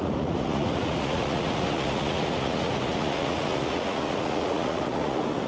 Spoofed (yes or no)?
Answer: yes